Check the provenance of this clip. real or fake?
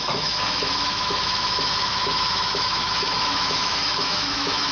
fake